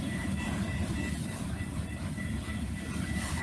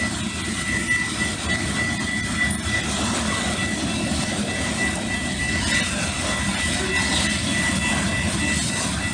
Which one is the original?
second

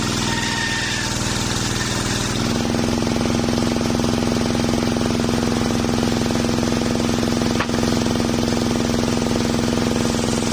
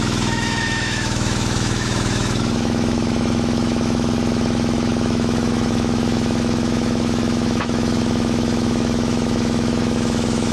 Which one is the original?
first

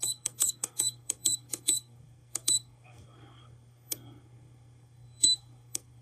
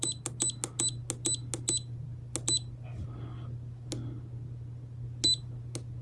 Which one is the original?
second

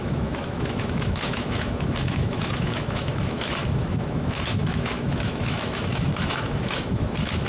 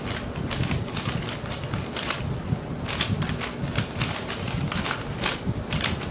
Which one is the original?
second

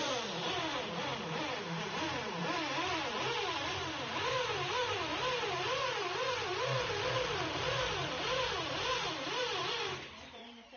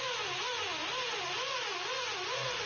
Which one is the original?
second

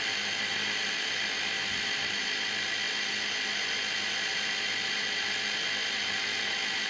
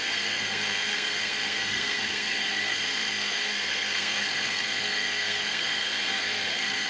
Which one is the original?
first